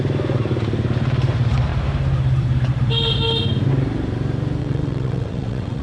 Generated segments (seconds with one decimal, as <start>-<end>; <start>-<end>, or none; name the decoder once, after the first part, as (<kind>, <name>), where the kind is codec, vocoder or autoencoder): 4.6-5.8 (vocoder, WaveNeXt)